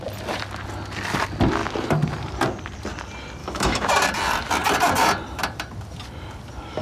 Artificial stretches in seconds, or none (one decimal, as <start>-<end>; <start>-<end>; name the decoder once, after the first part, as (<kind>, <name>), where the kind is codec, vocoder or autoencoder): 3.4-3.9 (autoencoder, DAC-VAE)